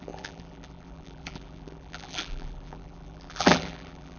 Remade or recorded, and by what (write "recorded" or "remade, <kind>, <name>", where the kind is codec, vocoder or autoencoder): remade, vocoder, BigVGAN v2